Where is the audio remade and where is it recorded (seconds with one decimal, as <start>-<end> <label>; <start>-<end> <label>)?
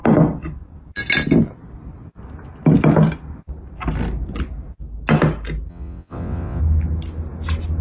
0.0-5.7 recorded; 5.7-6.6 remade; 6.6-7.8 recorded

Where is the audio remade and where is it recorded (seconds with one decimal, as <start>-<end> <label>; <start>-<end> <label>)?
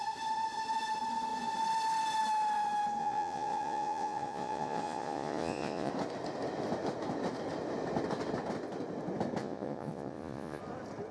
0.0-3.0 recorded; 3.0-5.9 remade; 5.9-9.4 recorded; 9.4-10.6 remade; 10.6-11.1 recorded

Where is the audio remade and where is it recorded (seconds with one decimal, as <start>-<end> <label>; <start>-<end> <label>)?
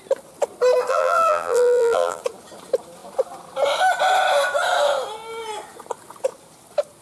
0.0-0.9 recorded; 0.9-2.2 remade; 2.2-7.0 recorded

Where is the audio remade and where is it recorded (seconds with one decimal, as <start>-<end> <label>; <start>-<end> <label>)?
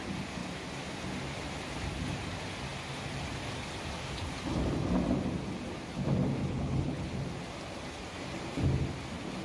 0.0-6.4 recorded; 6.4-7.1 remade; 7.1-9.4 recorded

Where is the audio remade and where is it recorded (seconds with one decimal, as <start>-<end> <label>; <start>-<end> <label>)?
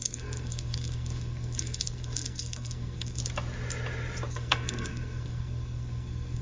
0.0-3.2 remade; 3.2-4.3 recorded; 4.3-6.4 remade